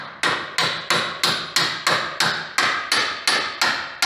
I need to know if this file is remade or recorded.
recorded